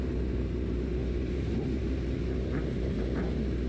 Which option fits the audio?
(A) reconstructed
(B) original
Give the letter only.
A